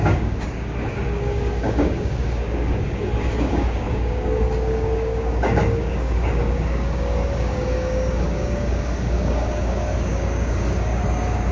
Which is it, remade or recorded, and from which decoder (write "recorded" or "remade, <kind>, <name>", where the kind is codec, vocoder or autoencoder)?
remade, codec, DAC